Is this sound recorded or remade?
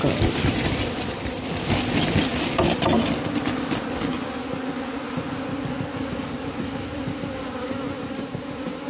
recorded